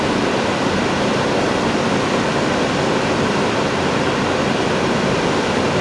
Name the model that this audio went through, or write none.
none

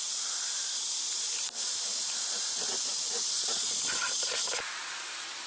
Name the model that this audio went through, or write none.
none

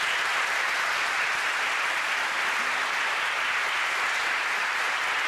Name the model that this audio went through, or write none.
none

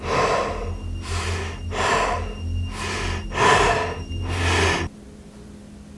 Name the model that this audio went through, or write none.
none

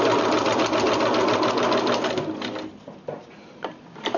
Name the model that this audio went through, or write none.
none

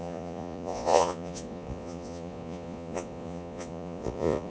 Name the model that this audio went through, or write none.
vocoder, Vocos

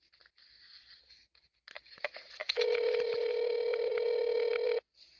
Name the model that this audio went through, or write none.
none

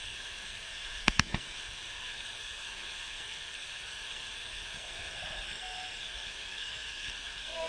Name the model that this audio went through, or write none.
codec, SNAC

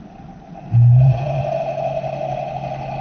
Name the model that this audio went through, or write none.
none